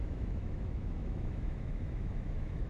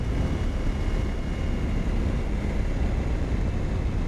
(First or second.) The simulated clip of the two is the first